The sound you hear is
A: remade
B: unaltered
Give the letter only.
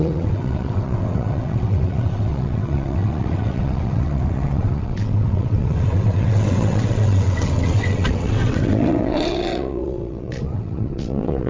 A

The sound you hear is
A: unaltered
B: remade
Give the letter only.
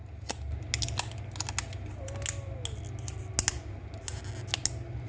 A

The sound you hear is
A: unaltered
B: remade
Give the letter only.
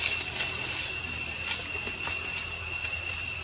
A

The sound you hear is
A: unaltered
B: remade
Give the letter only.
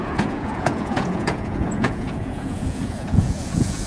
B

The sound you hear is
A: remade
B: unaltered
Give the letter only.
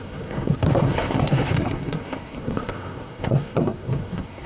A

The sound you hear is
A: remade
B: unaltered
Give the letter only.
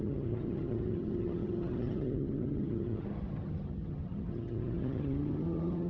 A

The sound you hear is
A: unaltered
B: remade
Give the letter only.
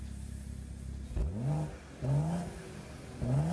A